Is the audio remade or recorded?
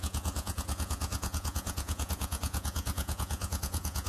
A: remade